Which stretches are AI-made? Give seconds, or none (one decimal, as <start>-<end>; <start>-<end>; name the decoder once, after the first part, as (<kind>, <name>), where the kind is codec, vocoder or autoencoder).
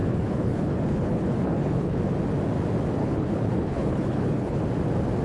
0.0-2.0 (codec, HILCodec); 3.0-4.6